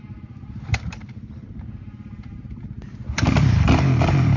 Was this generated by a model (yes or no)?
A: yes